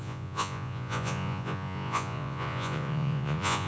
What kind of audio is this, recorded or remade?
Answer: remade